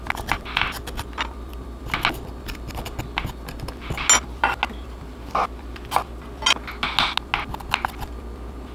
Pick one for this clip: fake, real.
real